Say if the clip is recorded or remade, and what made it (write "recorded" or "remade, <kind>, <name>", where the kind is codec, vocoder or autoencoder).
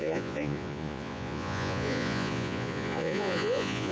remade, vocoder, Vocos